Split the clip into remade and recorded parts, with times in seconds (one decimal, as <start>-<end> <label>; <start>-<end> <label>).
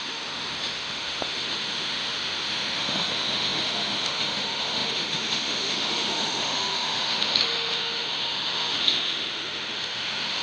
0.0-10.4 remade